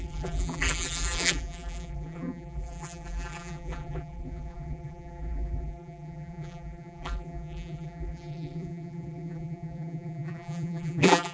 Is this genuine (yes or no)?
no